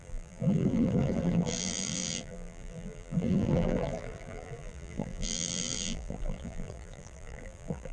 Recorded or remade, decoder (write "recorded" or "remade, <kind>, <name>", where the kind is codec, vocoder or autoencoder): remade, vocoder, BigVGAN v2